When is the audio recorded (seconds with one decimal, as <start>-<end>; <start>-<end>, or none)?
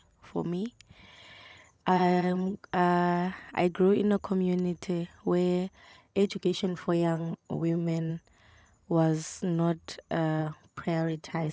0.0-1.0; 2.7-5.8; 8.1-10.4